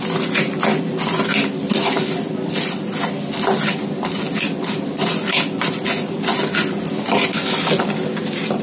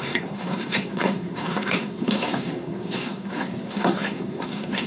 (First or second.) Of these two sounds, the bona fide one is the first